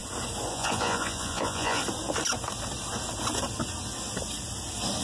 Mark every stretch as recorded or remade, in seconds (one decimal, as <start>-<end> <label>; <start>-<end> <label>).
0.0-0.5 recorded; 0.5-1.8 remade; 1.8-5.0 recorded